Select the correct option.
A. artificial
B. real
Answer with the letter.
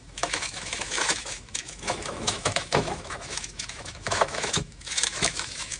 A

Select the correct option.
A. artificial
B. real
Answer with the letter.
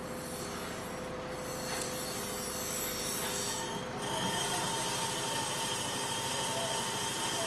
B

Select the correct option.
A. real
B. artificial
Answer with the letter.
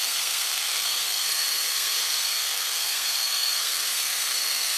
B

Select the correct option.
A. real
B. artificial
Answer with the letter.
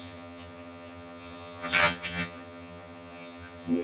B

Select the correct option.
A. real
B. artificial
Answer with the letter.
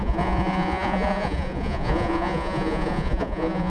B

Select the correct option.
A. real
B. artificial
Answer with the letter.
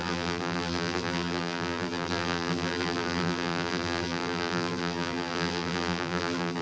B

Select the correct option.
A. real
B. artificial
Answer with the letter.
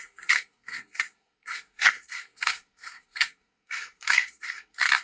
B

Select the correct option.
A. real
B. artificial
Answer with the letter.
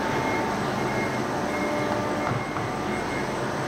A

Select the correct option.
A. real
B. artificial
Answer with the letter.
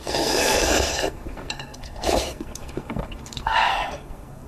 B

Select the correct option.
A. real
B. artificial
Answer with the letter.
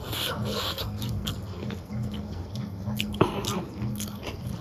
B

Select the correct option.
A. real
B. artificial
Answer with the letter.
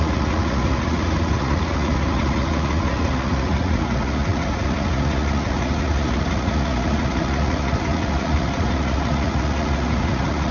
B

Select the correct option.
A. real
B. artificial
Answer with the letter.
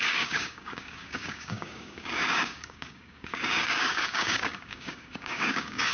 B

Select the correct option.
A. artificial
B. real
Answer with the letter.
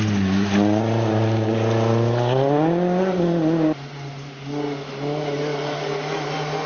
B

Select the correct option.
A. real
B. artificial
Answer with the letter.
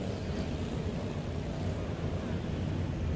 A